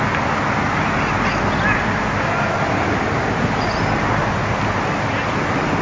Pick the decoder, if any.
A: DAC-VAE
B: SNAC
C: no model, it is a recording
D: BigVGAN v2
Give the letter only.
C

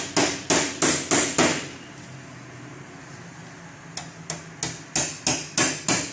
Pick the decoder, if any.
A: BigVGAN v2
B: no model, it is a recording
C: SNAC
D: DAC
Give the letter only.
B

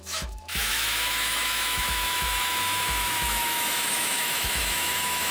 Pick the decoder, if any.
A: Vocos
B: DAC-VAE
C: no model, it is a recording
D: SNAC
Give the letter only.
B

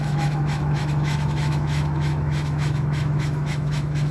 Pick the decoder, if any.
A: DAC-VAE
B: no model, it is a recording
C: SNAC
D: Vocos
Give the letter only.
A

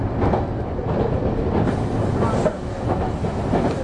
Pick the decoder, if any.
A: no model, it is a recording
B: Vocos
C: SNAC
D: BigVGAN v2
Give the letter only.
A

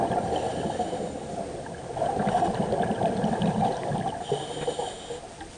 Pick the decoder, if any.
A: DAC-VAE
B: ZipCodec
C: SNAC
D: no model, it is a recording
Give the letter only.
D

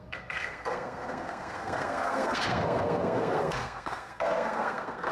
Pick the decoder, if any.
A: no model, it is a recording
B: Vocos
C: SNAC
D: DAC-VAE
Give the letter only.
C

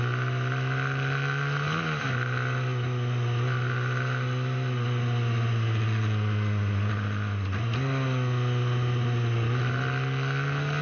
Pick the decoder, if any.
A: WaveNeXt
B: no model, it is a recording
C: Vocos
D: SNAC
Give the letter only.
B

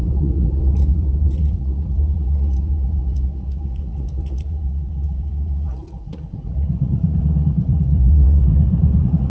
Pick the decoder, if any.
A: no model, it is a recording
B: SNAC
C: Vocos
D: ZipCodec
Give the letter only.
C